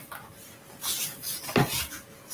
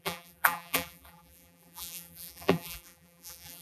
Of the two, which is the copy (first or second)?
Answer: second